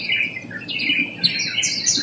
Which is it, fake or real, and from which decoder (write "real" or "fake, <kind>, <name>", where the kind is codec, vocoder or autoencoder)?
real